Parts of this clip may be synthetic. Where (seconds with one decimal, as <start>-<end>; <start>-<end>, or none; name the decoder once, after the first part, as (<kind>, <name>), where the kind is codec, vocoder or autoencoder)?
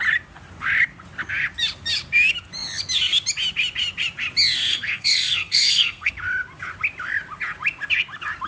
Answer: 4.7-6.1 (codec, SNAC)